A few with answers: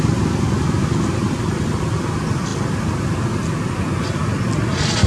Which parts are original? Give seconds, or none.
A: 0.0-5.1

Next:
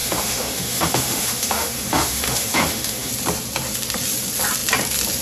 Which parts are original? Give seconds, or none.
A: 3.1-5.2

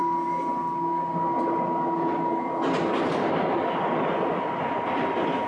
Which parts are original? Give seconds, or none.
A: 0.0-5.5

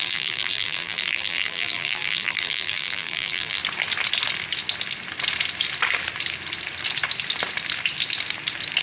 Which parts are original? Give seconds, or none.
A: 3.6-8.8

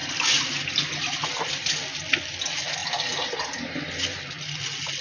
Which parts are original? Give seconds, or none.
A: 0.0-5.0